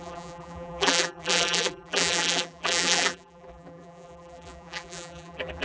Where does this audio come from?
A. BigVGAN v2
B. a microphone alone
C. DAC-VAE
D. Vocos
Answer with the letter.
A